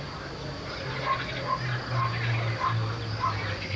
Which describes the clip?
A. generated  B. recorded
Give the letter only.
B